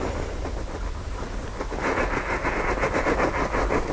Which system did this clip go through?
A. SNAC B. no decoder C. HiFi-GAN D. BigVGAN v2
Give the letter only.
B